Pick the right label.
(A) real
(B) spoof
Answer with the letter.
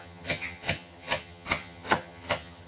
B